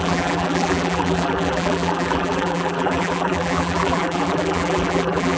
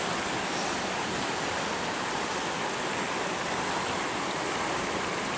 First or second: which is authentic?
second